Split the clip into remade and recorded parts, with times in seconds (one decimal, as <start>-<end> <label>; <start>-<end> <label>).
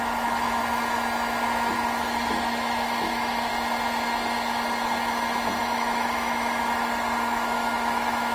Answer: 0.0-0.6 remade; 0.6-2.0 recorded; 2.0-3.5 remade; 3.5-5.6 recorded; 5.6-8.3 remade